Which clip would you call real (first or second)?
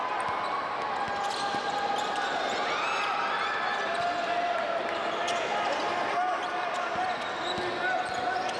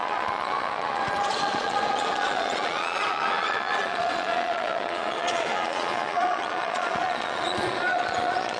first